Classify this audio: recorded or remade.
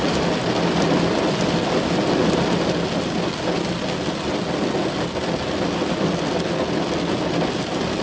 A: recorded